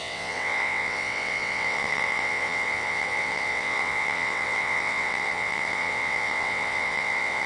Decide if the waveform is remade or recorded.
remade